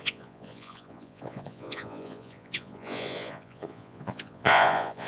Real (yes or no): no